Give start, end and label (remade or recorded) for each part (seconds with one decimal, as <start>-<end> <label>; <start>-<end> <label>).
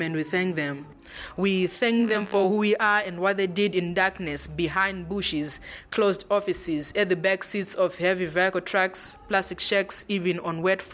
0.0-2.0 recorded; 2.0-2.5 remade; 2.5-10.9 recorded